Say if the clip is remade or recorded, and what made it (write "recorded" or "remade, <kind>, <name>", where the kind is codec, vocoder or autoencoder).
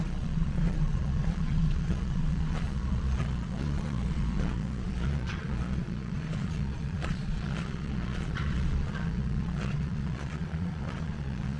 remade, vocoder, Vocos